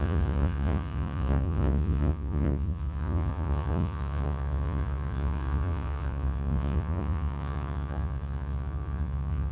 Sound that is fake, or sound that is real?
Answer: fake